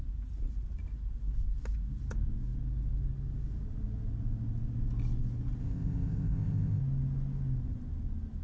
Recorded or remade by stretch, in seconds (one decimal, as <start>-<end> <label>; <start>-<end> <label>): 0.0-5.6 recorded; 5.6-6.8 remade; 6.8-8.4 recorded